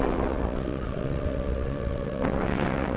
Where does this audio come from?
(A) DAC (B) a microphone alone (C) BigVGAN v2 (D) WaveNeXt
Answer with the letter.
D